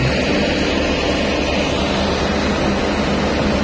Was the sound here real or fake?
real